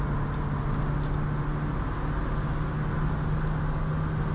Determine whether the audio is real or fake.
real